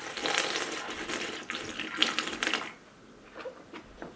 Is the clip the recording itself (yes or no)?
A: yes